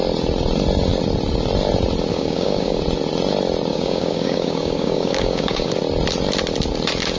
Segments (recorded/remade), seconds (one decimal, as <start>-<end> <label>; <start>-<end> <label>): 0.0-2.1 recorded; 2.1-2.8 remade; 2.8-3.7 recorded; 3.7-5.7 remade; 5.7-7.2 recorded